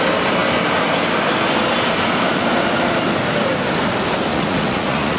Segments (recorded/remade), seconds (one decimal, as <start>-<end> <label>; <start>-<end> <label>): 0.0-4.3 recorded; 4.3-5.2 remade